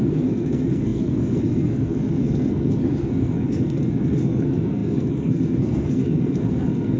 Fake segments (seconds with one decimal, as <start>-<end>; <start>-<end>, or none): 0.0-7.0